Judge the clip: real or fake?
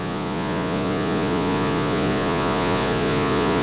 fake